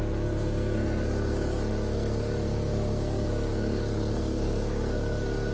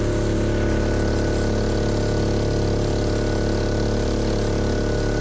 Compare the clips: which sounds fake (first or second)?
first